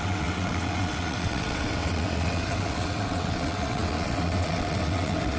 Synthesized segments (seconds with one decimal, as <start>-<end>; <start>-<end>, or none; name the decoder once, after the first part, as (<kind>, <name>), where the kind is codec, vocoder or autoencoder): 0.0-5.4 (vocoder, WaveNeXt)